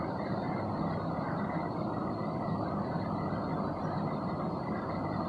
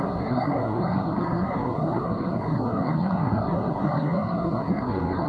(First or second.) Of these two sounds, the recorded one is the first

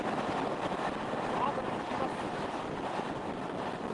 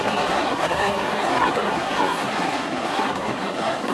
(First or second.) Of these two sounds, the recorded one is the first